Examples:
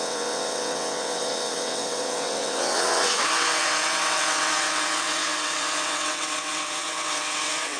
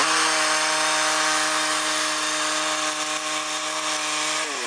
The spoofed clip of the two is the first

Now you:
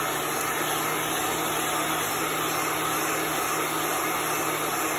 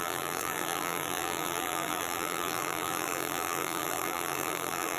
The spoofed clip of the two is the second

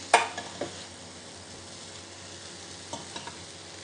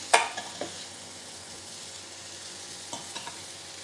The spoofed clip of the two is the second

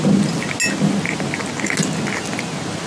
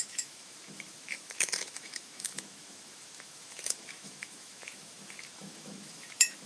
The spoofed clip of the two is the second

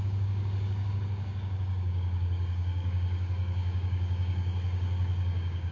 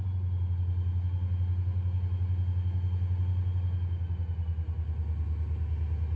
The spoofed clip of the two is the first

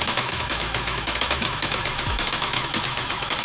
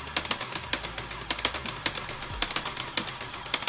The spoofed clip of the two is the first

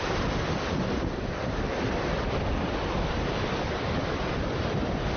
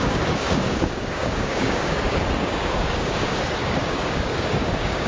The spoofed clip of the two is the second